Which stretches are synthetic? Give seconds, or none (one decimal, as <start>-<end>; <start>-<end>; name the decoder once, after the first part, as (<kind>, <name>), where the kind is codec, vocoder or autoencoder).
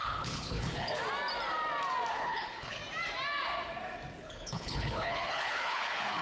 0.0-1.0 (codec, HILCodec); 2.1-2.8; 4.2-6.2